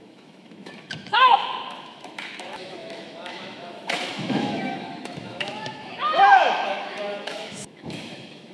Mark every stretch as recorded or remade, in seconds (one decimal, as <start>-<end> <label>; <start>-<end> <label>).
0.0-8.5 remade